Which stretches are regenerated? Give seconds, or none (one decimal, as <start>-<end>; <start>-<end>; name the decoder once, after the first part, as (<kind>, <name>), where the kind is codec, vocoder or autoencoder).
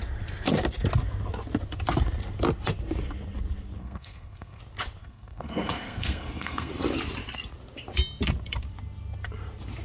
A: 3.8-4.6 (codec, SNAC); 5.0-6.7